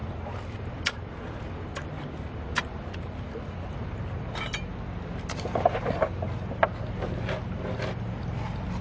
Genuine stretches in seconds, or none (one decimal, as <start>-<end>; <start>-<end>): 0.0-8.8